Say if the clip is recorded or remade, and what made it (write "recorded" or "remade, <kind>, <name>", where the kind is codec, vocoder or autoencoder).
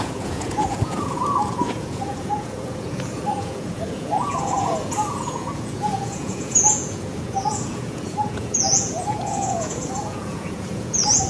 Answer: remade, vocoder, Vocos